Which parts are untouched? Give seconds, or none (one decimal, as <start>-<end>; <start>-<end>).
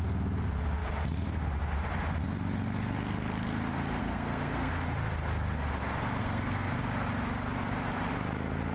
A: 0.0-4.0; 4.7-6.2; 6.7-8.7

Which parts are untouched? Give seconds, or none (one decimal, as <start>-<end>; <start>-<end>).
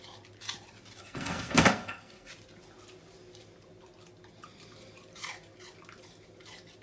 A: 0.0-1.0; 2.3-6.8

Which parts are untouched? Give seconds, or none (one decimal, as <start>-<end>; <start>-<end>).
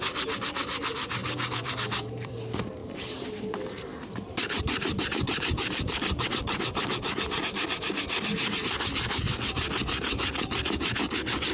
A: 0.0-1.2; 2.3-2.8; 7.4-8.3; 9.2-11.5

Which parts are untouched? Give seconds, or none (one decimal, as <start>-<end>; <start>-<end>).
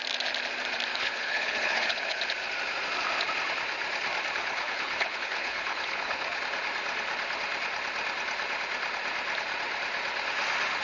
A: 0.0-0.9; 2.2-4.4; 6.4-10.8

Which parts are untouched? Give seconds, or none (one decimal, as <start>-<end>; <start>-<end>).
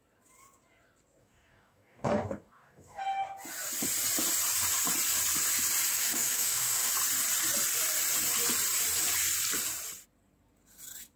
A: 0.0-1.2; 3.0-5.9; 6.9-11.2